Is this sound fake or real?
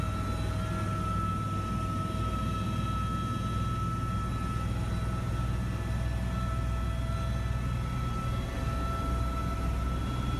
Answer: real